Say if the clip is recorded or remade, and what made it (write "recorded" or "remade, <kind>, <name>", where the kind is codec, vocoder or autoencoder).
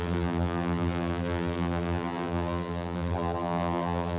remade, vocoder, BigVGAN v2